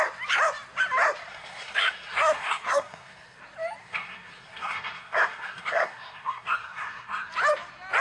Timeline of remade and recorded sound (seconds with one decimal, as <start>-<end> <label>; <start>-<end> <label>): 0.0-1.3 recorded; 1.3-3.4 remade; 3.4-3.8 recorded; 3.8-7.3 remade; 7.3-8.0 recorded